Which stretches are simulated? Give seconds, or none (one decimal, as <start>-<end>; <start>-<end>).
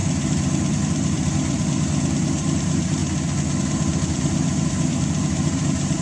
0.0-3.0; 3.6-6.0